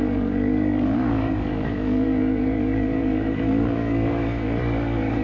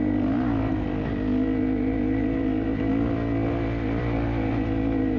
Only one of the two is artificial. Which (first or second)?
first